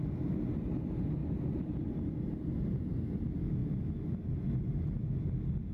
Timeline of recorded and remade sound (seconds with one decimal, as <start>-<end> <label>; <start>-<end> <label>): 0.0-5.7 recorded